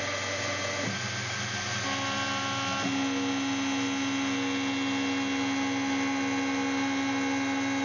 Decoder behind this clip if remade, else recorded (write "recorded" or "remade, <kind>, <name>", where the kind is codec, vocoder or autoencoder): recorded